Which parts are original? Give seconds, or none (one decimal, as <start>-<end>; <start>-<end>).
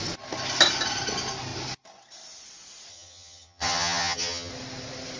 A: 0.0-2.9; 4.5-5.2